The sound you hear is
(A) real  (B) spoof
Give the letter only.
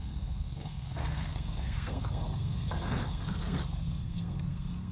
B